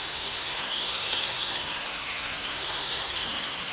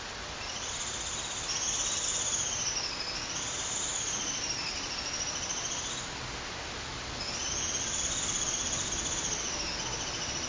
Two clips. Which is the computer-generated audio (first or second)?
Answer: first